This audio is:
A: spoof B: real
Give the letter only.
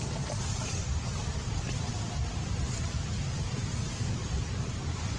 A